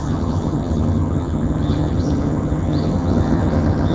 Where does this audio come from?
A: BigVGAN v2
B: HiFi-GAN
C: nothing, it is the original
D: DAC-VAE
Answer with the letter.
B